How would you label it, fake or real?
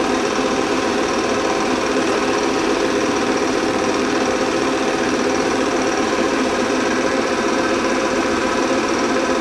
fake